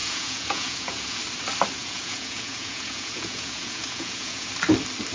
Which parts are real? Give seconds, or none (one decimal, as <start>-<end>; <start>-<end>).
1.2-1.8; 4.5-5.1